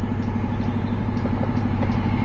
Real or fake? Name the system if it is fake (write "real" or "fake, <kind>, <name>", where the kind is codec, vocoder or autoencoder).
fake, vocoder, BigVGAN v2